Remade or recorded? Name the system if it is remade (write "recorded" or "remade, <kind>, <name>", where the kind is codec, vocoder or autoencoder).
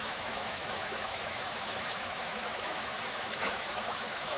remade, autoencoder, DAC-VAE